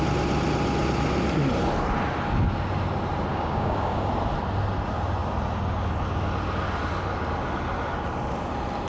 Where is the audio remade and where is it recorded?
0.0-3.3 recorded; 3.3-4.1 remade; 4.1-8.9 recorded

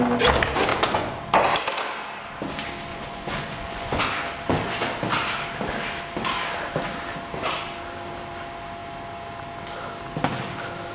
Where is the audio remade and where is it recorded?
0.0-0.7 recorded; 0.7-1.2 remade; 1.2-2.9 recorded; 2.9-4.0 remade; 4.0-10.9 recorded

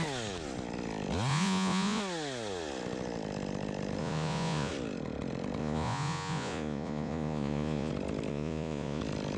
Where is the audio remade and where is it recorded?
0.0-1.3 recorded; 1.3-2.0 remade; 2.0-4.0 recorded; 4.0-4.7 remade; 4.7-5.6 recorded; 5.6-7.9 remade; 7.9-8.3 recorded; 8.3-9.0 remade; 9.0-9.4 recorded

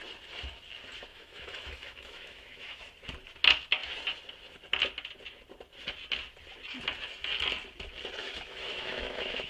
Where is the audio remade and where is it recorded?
0.0-1.1 recorded; 1.1-2.8 remade; 2.8-8.2 recorded; 8.2-9.5 remade

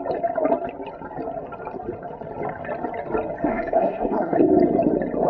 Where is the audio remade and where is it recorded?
0.0-3.5 recorded; 3.5-4.5 remade; 4.5-5.3 recorded

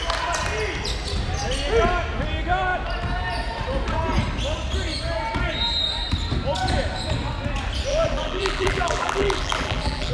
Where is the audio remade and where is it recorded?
0.0-7.9 recorded; 7.9-10.1 remade

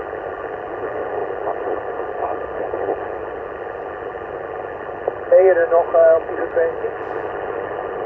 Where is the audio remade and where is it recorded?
0.0-8.1 recorded